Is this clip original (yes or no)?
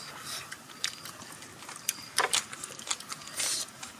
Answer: yes